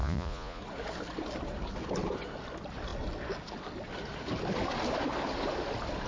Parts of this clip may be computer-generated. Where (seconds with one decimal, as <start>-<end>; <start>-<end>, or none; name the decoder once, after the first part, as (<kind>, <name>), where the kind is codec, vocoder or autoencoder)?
0.0-0.6 (vocoder, Vocos)